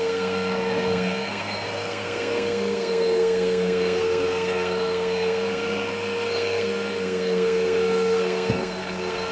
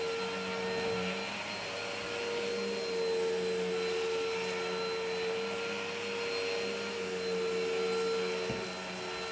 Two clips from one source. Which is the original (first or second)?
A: second